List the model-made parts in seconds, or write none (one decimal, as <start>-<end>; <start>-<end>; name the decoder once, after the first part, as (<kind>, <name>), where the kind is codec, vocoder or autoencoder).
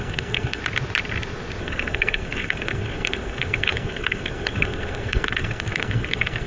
0.0-0.6 (codec, SNAC); 1.6-6.5